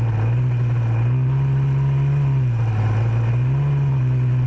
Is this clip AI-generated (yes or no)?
no